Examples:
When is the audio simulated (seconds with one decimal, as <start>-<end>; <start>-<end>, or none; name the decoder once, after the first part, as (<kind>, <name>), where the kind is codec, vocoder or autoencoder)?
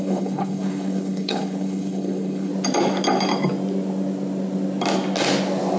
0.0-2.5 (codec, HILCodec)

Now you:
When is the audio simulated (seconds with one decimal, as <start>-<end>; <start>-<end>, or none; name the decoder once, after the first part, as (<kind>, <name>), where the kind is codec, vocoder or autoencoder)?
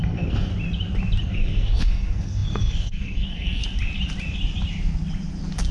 0.0-0.5 (codec, SNAC); 1.2-3.6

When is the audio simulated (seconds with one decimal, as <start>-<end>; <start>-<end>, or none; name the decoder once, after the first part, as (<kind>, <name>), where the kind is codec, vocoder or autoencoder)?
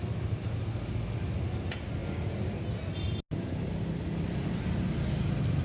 none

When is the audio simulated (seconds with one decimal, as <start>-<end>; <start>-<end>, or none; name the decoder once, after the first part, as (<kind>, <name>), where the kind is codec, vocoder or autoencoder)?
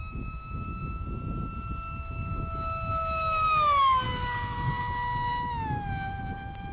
none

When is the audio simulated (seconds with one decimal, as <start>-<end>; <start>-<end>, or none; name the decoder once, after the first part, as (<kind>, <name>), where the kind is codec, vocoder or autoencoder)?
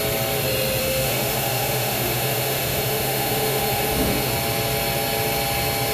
0.8-4.3 (autoencoder, DAC-VAE)